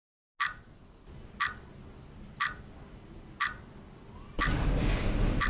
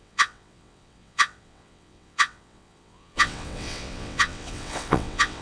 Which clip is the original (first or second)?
first